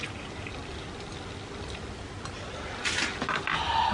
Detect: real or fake real